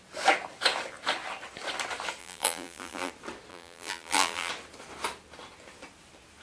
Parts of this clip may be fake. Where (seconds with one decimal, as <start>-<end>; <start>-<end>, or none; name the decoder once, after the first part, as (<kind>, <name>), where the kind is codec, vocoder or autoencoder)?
2.2-3.1 (vocoder, BigVGAN v2); 3.5-4.5

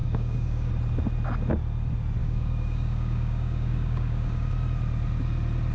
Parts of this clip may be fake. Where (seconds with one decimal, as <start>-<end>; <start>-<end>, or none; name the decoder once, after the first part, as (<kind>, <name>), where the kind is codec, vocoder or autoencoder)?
0.0-0.7 (codec, DAC); 2.2-4.5

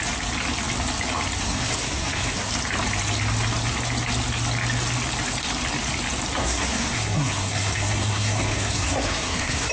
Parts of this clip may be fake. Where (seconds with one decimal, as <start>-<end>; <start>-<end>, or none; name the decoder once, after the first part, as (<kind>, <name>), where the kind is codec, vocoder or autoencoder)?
1.4-2.5 (codec, SNAC); 6.4-9.7

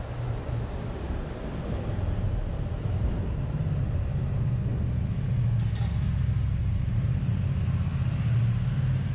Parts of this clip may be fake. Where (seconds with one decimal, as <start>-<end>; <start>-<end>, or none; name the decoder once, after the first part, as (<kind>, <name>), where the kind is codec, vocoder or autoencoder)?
0.0-4.7 (vocoder, BigVGAN v2); 6.6-7.9